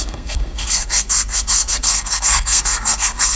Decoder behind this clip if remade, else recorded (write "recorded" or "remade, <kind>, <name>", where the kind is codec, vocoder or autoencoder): remade, codec, SNAC